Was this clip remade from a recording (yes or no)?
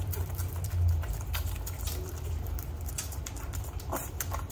yes